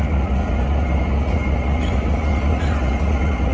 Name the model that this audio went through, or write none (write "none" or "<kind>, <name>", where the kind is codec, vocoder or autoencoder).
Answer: vocoder, Vocos